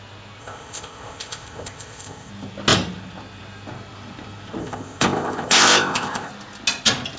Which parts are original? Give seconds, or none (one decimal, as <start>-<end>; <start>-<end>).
0.0-0.4; 2.3-4.6; 6.3-7.2